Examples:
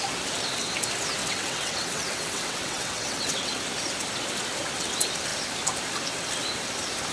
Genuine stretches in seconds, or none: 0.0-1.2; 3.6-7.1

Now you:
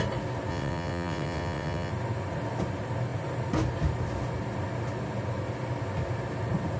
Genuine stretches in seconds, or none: 0.0-0.5; 1.9-6.8

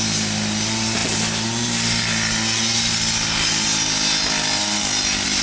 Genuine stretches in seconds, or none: 0.0-5.4

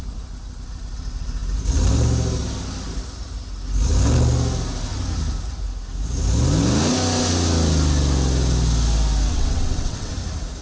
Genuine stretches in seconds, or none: 0.0-9.3; 10.1-10.6